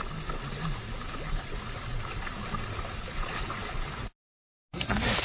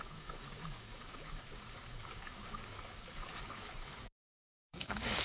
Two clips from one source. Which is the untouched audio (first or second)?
first